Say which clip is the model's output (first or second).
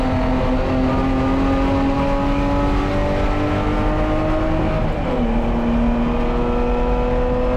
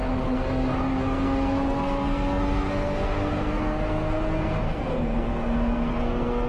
second